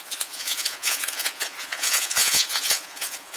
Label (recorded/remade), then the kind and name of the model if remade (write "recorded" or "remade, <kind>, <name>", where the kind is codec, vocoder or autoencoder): remade, vocoder, Vocos